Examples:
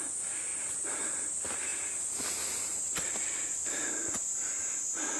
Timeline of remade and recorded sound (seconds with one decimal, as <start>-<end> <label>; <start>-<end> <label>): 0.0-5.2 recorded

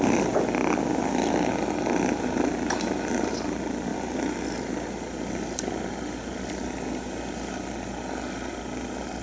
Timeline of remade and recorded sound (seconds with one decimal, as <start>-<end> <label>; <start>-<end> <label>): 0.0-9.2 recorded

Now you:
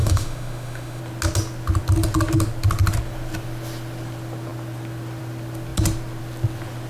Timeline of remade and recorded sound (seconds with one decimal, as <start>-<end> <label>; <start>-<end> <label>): 0.0-1.0 remade; 1.0-6.9 recorded

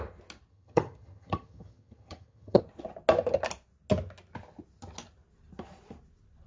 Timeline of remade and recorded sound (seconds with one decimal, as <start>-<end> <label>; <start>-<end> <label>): 0.0-0.5 recorded; 0.5-2.6 remade; 2.6-6.5 recorded